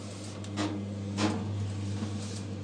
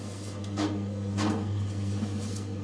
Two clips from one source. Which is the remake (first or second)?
second